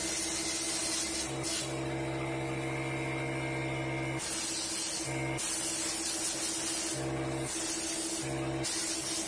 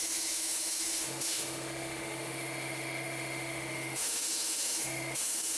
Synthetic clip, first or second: second